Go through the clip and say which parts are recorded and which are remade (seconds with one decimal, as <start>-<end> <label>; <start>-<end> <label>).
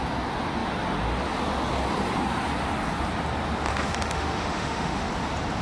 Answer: 0.0-3.7 recorded; 3.7-5.1 remade; 5.1-5.6 recorded